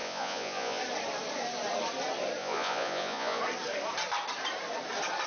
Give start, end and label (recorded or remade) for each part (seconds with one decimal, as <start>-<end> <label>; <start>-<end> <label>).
0.0-0.8 remade; 0.8-2.4 recorded; 2.4-3.4 remade; 3.4-5.3 recorded